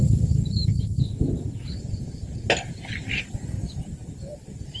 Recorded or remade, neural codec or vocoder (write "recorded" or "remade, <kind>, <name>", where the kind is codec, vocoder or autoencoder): recorded